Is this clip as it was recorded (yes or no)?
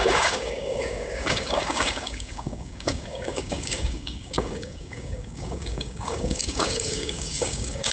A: no